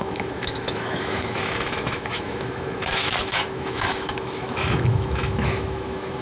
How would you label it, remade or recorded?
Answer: remade